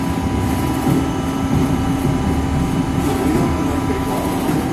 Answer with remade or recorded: recorded